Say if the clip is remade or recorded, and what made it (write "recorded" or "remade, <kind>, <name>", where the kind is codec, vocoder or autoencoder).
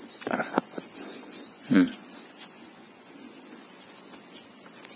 remade, vocoder, Vocos